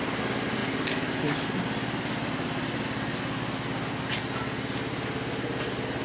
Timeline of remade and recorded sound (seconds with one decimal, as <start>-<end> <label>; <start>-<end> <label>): 0.0-6.0 recorded